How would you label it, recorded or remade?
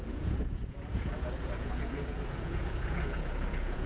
remade